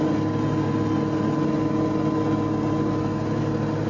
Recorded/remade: recorded